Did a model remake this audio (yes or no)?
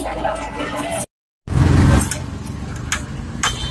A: no